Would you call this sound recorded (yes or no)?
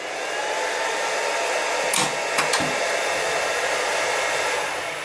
yes